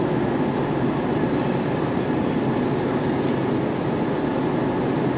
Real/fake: real